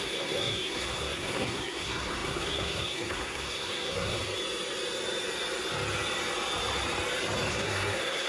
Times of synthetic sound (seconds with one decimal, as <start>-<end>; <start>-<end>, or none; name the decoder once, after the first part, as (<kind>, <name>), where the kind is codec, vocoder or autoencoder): 0.0-4.2 (codec, SNAC); 7.5-8.3